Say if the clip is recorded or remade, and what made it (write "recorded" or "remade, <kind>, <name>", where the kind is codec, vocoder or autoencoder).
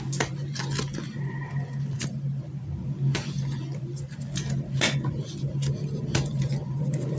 recorded